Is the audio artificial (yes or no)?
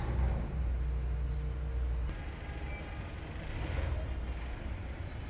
no